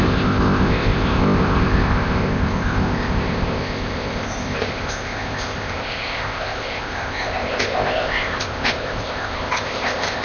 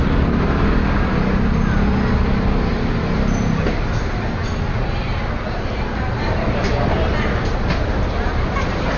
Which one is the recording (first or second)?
second